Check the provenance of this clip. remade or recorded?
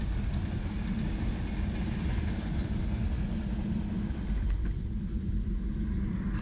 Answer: recorded